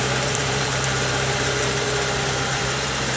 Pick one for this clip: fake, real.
fake